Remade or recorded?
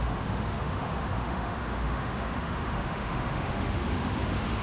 remade